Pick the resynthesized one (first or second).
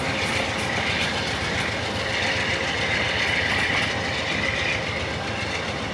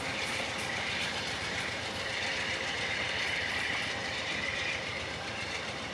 second